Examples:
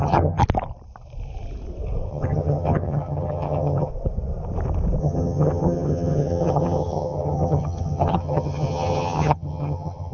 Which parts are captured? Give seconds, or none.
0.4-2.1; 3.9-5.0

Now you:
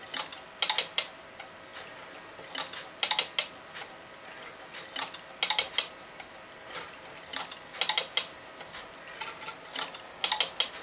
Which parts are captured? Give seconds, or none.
0.0-10.8

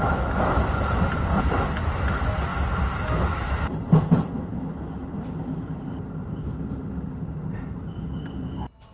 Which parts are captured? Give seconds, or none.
0.0-8.9

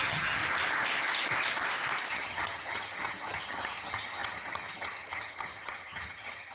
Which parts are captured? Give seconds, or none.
0.4-2.1

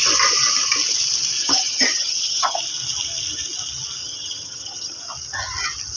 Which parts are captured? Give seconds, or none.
0.0-1.4; 2.6-4.0; 5.0-6.0

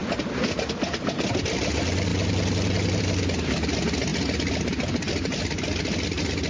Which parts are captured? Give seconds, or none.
0.0-6.5

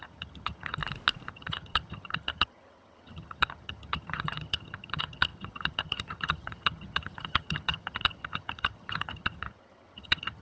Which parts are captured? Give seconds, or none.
0.8-1.3

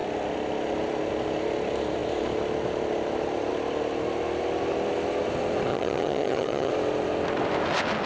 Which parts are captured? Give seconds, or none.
0.0-5.7; 6.7-8.1